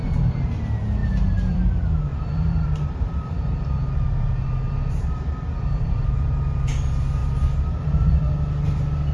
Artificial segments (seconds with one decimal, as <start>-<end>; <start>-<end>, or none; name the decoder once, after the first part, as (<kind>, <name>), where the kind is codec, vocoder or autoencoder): 0.0-0.5 (vocoder, BigVGAN v2); 1.0-1.7; 2.1-6.7; 7.2-8.3